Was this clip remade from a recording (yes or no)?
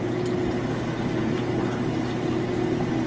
no